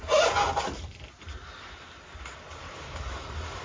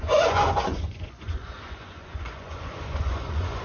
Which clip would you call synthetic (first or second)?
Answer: second